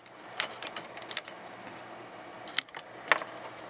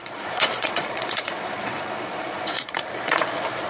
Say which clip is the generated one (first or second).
second